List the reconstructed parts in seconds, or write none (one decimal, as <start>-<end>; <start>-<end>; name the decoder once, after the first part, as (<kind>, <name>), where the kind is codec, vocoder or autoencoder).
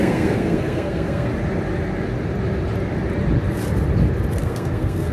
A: 0.0-1.3 (codec, SNAC); 4.4-5.1